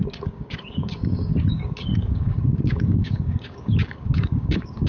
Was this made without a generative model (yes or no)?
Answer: no